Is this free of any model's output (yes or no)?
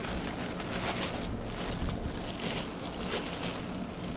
yes